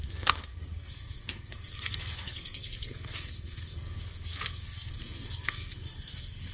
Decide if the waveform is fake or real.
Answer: fake